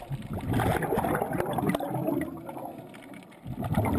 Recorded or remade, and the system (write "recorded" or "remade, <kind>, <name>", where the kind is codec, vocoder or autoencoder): recorded